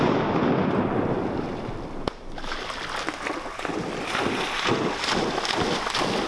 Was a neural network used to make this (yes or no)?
no